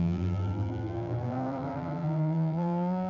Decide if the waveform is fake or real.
fake